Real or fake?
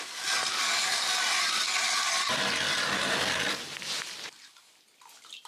real